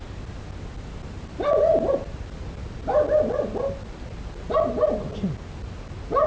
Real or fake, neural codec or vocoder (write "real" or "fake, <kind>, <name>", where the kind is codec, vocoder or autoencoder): real